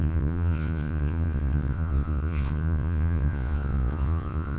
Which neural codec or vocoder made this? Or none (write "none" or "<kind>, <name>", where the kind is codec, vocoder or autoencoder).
vocoder, Vocos